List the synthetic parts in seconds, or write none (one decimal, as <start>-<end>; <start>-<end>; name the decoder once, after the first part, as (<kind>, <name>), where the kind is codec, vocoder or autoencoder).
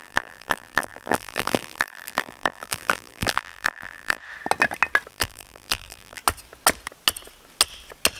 0.0-4.2 (vocoder, BigVGAN v2); 5.1-6.2